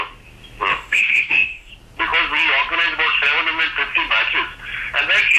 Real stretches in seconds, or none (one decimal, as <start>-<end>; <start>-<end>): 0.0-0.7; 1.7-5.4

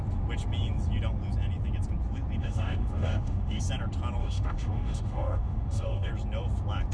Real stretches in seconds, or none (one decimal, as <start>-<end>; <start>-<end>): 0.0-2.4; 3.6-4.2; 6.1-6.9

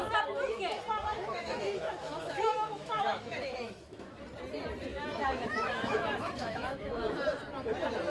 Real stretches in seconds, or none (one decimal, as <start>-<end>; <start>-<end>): 0.0-1.1; 4.2-4.9; 7.0-8.1

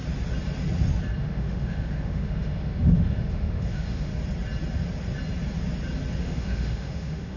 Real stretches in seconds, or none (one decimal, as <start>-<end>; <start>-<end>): 0.0-1.2; 4.1-6.2

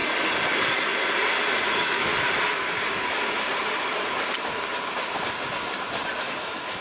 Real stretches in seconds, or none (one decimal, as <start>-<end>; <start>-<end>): 0.0-1.7; 2.1-6.2